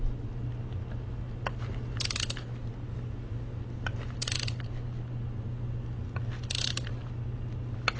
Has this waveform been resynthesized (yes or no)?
no